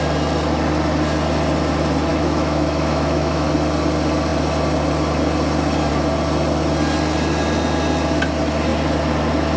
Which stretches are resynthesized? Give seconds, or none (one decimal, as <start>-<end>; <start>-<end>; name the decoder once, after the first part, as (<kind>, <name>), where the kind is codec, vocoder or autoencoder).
2.1-3.5 (autoencoder, DAC-VAE)